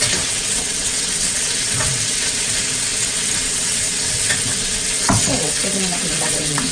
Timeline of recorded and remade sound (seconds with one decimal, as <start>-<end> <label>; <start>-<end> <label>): 0.0-6.7 remade

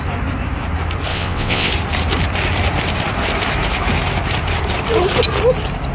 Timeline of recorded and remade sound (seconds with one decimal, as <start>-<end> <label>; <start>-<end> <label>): 0.0-1.1 recorded; 1.1-1.7 remade; 1.7-5.9 recorded

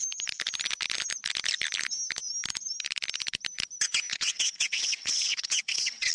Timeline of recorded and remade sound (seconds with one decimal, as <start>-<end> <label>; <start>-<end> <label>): 0.0-4.1 recorded; 4.1-6.1 remade